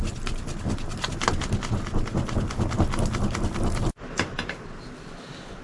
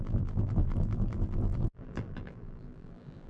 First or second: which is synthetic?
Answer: second